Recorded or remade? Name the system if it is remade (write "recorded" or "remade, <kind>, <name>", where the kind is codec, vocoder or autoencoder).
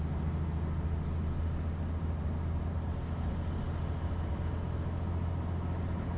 recorded